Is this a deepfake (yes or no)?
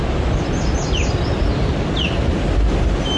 no